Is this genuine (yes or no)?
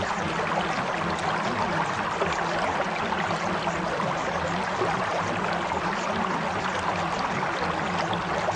yes